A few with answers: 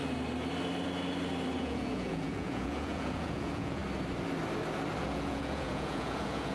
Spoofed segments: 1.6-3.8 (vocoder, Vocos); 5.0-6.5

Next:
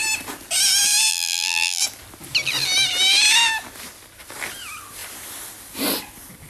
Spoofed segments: 1.1-1.8 (vocoder, BigVGAN v2)

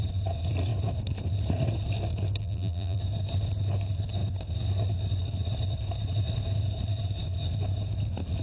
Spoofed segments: 2.4-3.0 (vocoder, BigVGAN v2)